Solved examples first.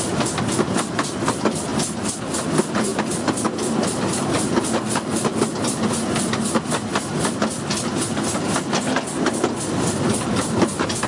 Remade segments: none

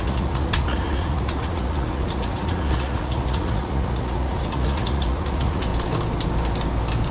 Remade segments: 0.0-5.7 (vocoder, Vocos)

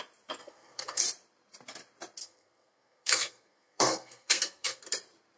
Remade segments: 0.4-1.0 (codec, SNAC); 2.2-4.8

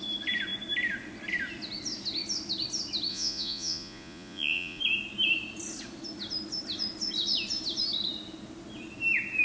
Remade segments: 3.1-4.8 (vocoder, Vocos)

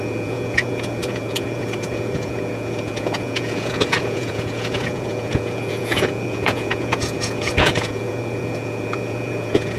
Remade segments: 0.0-9.8 (vocoder, Vocos)

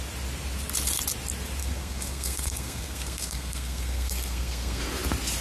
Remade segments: 1.6-4.8 (codec, SNAC)

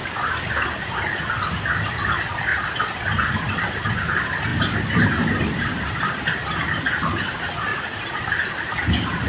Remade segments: 0.0-0.5 (vocoder, BigVGAN v2); 2.5-3.9; 4.5-6.8; 7.7-8.3

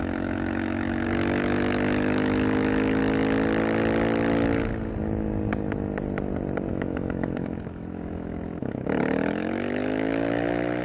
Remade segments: 0.0-3.0 (autoencoder, DAC-VAE); 6.7-10.8